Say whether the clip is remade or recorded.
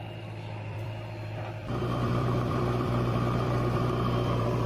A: remade